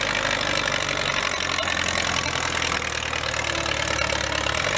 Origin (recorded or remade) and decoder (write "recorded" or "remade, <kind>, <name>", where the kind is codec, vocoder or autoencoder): recorded